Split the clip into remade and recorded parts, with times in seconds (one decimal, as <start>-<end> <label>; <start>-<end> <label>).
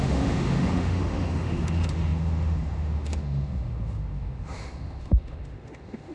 0.0-6.1 remade